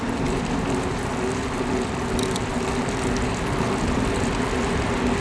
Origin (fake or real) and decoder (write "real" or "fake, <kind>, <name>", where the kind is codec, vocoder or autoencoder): real